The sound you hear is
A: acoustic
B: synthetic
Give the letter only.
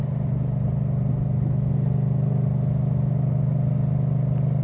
A